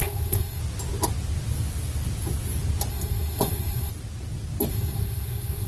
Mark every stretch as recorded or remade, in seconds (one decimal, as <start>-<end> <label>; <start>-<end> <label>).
0.0-0.6 remade; 0.6-2.9 recorded; 2.9-3.9 remade; 3.9-4.7 recorded; 4.7-5.7 remade